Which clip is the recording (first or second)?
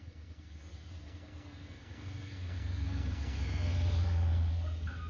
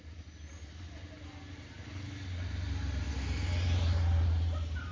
second